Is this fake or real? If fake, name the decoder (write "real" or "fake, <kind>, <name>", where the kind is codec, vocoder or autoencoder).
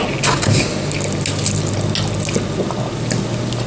real